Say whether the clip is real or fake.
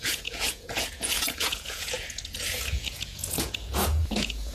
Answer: fake